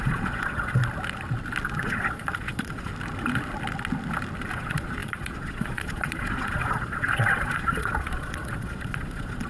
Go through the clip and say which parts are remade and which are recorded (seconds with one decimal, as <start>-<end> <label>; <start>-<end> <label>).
0.0-0.8 remade; 0.8-1.8 recorded; 1.8-2.9 remade; 2.9-4.5 recorded; 4.5-9.5 remade